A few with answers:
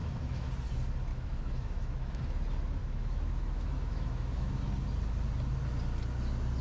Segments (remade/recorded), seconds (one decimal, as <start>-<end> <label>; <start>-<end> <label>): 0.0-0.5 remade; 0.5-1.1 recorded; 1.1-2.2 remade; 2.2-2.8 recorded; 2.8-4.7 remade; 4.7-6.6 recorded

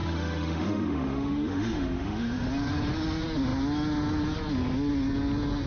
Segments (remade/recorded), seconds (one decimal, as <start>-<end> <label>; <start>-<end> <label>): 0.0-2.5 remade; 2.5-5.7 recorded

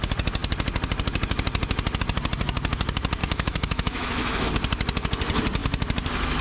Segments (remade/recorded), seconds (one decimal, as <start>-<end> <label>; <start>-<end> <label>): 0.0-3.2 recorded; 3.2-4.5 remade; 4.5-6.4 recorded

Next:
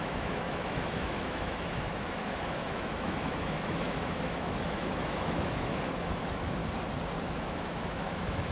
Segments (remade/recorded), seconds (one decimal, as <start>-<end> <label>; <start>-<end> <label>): 0.0-6.6 remade; 6.6-7.3 recorded; 7.3-8.5 remade

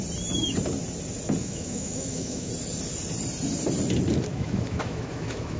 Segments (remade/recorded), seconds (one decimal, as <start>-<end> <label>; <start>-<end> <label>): 0.0-1.4 recorded; 1.4-2.5 remade; 2.5-4.3 recorded; 4.3-5.6 remade

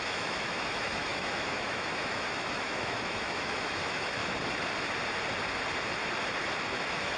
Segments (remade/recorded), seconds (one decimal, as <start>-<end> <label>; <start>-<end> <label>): 0.0-4.2 remade; 4.2-6.6 recorded; 6.6-7.2 remade

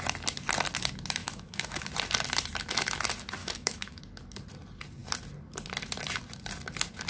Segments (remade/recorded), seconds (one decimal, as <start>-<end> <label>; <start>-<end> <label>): 0.0-1.2 recorded; 1.2-1.9 remade; 1.9-3.4 recorded; 3.4-4.0 remade; 4.0-7.1 recorded

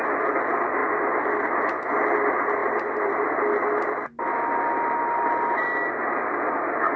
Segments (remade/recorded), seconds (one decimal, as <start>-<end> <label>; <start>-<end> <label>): 0.0-7.0 recorded